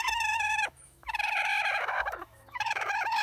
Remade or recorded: remade